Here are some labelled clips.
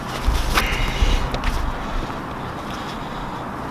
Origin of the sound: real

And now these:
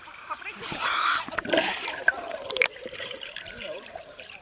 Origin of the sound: fake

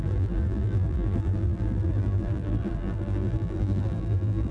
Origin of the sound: fake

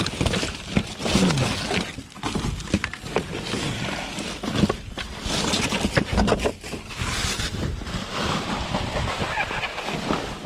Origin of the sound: real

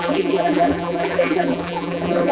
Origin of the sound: fake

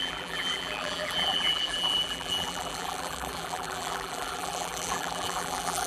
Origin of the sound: fake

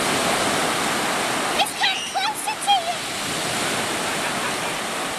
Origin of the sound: real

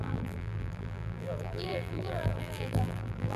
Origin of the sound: fake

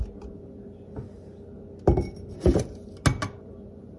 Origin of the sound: real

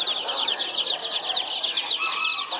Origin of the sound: real